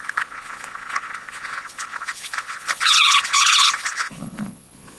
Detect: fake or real fake